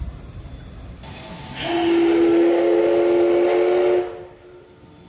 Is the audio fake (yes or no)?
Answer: no